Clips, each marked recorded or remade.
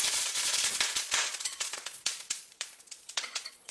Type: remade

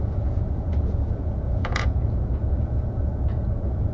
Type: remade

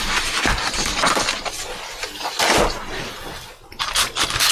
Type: recorded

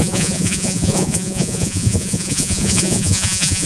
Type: remade